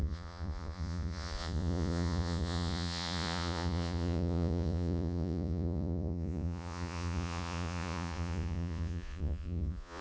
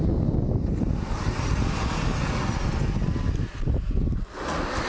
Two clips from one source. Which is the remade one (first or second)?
first